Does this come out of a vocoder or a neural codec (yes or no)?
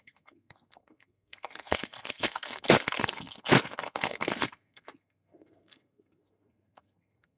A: yes